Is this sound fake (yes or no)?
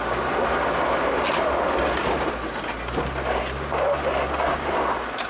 no